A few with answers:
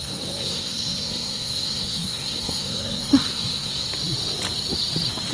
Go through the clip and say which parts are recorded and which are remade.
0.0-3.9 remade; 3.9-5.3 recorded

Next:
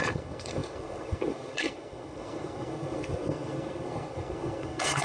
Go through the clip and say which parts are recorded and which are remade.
0.0-5.0 remade

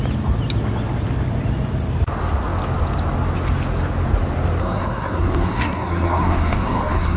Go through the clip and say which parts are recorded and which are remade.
0.0-4.6 recorded; 4.6-7.2 remade

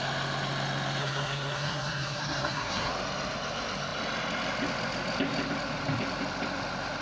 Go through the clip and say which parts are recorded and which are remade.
0.0-1.0 recorded; 1.0-2.9 remade; 2.9-7.0 recorded

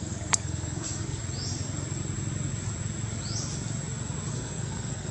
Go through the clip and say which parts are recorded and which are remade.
0.0-1.2 remade; 1.2-4.3 recorded; 4.3-5.1 remade

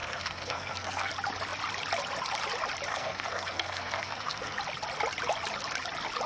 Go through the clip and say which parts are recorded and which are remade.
0.0-1.1 remade; 1.1-2.9 recorded; 2.9-4.6 remade; 4.6-6.3 recorded

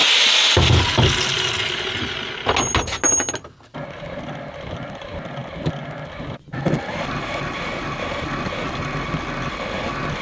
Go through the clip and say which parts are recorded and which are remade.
0.0-10.2 recorded